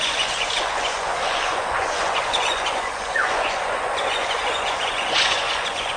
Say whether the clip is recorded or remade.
remade